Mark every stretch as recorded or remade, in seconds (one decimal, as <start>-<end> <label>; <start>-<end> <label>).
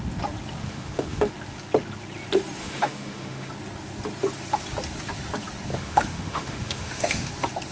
0.0-0.6 recorded; 0.6-1.3 remade; 1.3-2.6 recorded; 2.6-3.5 remade; 3.5-5.7 recorded; 5.7-7.3 remade; 7.3-7.7 recorded